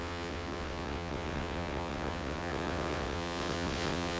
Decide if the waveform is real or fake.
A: fake